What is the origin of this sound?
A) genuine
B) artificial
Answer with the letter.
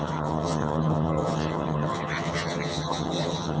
B